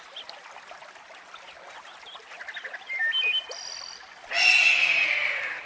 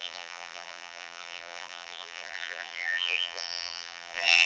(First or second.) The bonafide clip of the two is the first